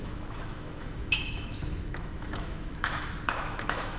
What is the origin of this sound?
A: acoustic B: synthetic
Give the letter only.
B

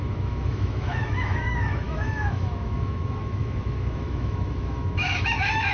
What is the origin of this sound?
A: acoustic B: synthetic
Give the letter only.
B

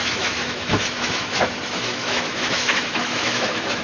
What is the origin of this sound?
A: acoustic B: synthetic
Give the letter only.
B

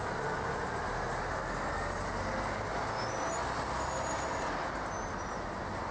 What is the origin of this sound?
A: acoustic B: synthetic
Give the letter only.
A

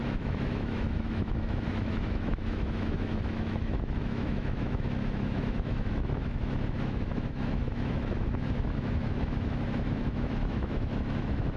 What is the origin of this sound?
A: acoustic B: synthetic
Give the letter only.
B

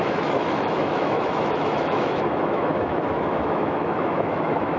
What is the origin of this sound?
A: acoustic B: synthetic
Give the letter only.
B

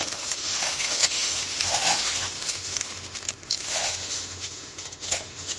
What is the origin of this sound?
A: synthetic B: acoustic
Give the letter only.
A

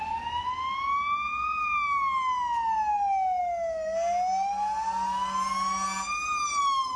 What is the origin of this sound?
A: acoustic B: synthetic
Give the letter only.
A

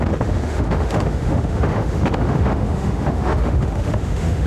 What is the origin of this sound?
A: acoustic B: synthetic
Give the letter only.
B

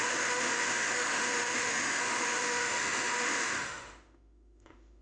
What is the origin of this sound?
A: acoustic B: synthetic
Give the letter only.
B